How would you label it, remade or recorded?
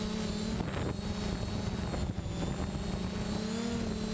recorded